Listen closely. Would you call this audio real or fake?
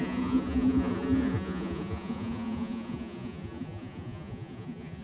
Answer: fake